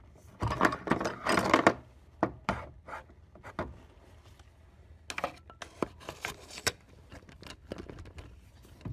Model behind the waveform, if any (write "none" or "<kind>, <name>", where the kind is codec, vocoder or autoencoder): none